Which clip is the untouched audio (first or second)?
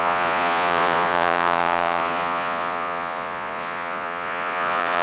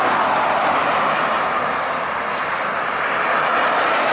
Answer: second